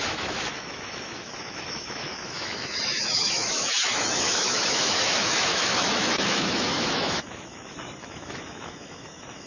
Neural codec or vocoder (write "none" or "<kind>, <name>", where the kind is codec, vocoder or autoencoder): autoencoder, DAC-VAE